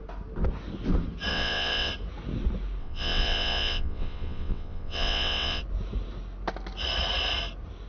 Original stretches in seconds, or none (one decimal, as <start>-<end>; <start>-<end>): 0.0-1.3; 1.9-2.8; 5.6-7.9

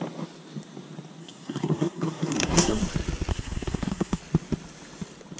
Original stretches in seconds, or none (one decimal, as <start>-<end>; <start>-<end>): 0.0-1.2; 2.8-3.3; 4.2-5.4

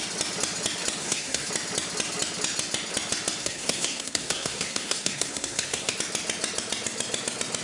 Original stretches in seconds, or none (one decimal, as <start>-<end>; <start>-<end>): 0.0-1.0; 1.5-3.4; 5.9-7.6

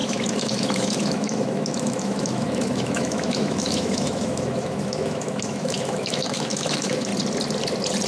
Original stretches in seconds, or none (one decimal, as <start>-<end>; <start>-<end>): 7.1-8.1